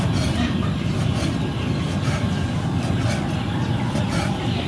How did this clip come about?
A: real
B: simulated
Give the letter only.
A